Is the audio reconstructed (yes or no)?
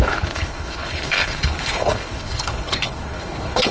yes